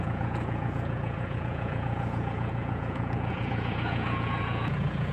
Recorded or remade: remade